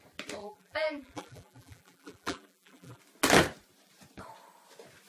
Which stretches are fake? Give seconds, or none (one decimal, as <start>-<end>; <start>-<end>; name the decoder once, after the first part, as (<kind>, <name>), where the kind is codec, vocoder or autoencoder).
0.4-3.0 (vocoder, BigVGAN v2)